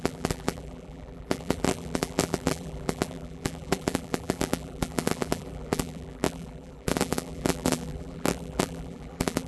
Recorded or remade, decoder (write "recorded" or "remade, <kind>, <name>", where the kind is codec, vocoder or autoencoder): remade, vocoder, BigVGAN v2